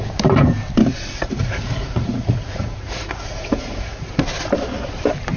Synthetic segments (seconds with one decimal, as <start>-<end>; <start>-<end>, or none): 0.9-4.1